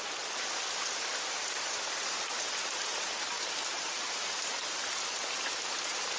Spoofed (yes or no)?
yes